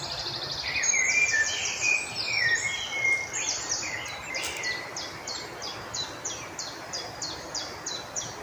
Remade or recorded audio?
recorded